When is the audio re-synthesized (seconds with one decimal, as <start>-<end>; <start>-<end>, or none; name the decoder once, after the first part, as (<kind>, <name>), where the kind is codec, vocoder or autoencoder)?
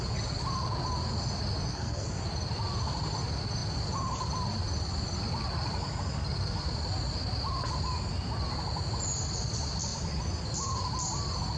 1.7-2.2 (codec, SNAC)